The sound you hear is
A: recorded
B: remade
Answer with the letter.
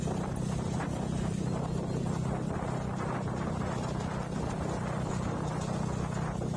A